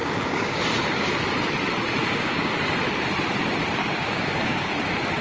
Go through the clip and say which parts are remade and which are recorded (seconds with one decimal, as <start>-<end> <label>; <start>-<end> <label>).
0.0-0.6 remade; 0.6-2.0 recorded; 2.0-2.5 remade; 2.5-3.8 recorded; 3.8-4.7 remade; 4.7-5.2 recorded